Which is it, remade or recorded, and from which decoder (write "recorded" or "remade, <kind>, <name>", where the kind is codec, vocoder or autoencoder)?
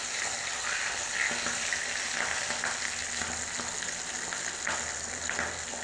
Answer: recorded